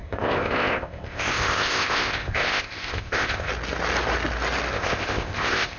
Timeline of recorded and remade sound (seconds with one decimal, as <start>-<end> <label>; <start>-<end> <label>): 0.0-3.5 remade; 3.5-4.7 recorded; 4.7-5.8 remade